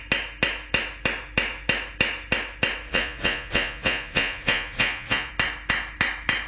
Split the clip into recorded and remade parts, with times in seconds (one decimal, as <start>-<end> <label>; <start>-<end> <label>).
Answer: 0.0-2.9 recorded; 2.9-5.3 remade; 5.3-6.5 recorded